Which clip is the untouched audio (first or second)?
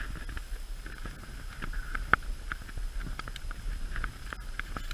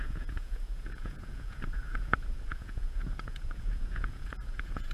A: first